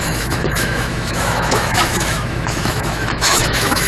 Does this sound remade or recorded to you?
remade